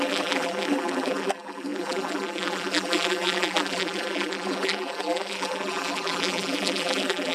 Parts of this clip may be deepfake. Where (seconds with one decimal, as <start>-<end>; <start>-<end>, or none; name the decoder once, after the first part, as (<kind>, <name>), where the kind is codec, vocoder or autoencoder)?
0.0-7.3 (vocoder, BigVGAN v2)